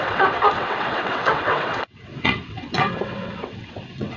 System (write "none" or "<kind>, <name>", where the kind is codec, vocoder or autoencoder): vocoder, WaveNeXt